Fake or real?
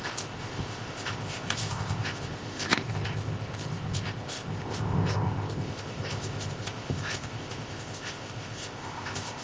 fake